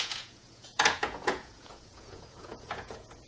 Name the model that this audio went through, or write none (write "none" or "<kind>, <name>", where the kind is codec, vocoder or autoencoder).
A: vocoder, Vocos